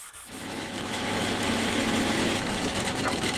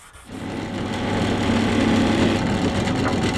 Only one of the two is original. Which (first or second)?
second